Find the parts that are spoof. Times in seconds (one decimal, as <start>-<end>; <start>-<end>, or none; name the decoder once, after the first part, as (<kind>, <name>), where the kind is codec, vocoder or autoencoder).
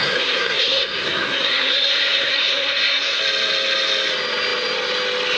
0.0-3.2 (codec, SNAC)